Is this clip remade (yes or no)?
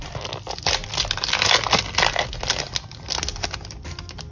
no